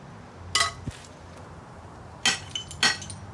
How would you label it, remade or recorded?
recorded